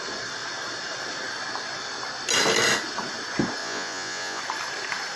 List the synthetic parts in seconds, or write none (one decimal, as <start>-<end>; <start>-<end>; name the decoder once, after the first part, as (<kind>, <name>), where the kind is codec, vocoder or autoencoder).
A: 3.6-4.4 (vocoder, Vocos)